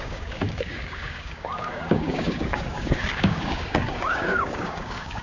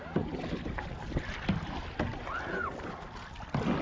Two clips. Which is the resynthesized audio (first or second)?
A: first